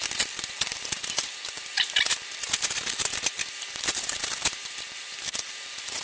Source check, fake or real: fake